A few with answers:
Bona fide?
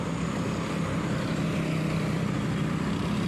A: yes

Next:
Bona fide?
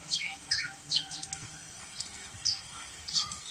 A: no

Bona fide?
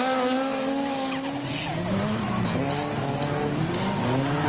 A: yes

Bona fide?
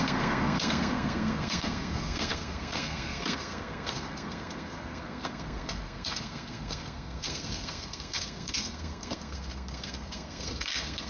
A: no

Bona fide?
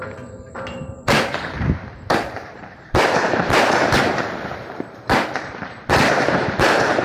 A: no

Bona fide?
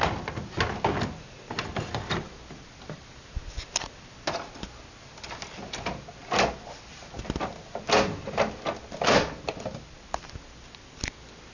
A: yes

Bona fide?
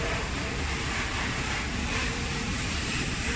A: no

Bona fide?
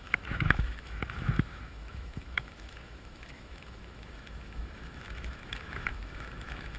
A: no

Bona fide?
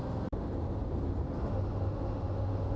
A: yes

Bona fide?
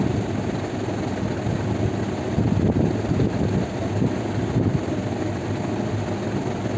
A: yes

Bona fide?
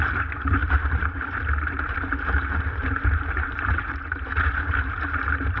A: no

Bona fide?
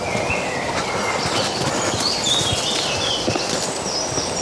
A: yes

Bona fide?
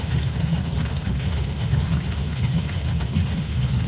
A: no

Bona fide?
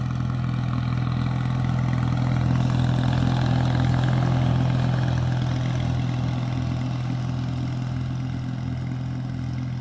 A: yes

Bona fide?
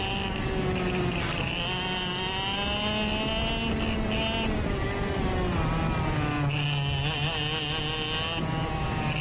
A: yes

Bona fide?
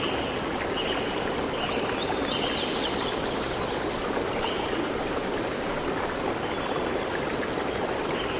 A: yes